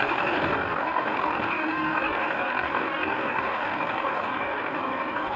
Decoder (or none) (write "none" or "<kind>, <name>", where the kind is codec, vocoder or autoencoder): codec, DAC